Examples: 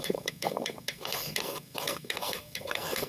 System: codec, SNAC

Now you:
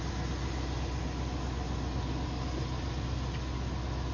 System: none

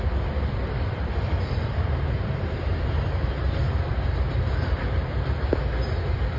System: none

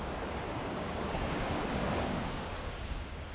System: codec, DAC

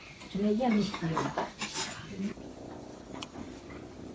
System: vocoder, Vocos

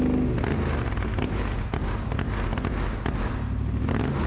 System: none